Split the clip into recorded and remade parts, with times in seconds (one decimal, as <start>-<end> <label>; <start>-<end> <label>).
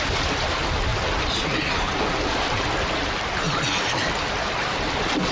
0.0-5.3 recorded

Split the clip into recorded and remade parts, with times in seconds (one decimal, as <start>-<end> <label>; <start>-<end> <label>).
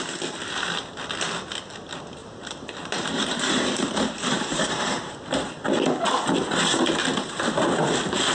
0.0-2.2 recorded; 2.2-5.2 remade; 5.2-7.1 recorded; 7.1-7.9 remade; 7.9-8.3 recorded